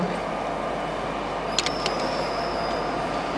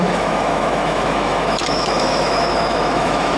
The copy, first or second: second